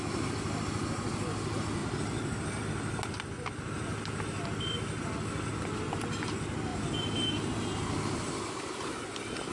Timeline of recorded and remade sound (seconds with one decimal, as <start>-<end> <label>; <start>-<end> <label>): 0.0-9.5 recorded